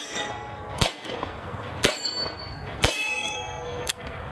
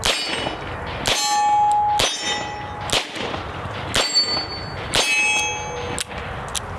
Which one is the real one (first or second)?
second